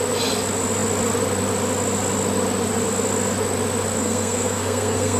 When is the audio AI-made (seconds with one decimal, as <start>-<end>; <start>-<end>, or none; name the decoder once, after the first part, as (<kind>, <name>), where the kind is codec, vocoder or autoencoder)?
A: 4.0-5.2 (codec, SNAC)